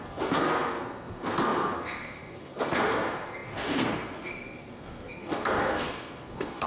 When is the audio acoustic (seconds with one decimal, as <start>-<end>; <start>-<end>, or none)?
none